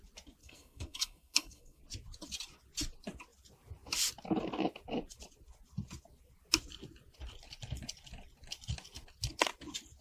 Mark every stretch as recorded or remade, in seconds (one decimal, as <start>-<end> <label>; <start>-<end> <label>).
0.0-0.4 recorded; 0.4-1.8 remade; 1.8-10.0 recorded